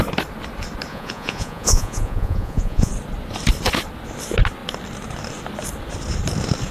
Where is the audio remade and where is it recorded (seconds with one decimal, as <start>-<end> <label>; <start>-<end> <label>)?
0.0-0.9 recorded; 0.9-2.9 remade; 2.9-6.7 recorded